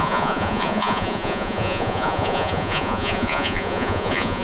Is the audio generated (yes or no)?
yes